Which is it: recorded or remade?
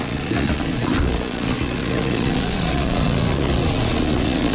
remade